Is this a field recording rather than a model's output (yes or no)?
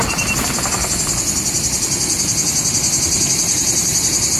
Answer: no